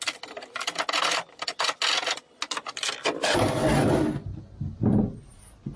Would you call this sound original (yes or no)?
yes